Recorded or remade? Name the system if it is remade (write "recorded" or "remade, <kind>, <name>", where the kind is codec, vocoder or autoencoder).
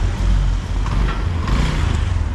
recorded